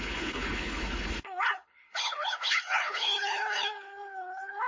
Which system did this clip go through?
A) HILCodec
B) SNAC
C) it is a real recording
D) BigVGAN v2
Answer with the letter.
A